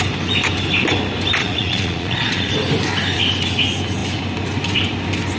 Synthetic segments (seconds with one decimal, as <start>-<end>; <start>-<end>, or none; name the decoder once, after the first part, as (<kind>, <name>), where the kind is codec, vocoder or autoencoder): 1.4-2.5 (vocoder, Vocos)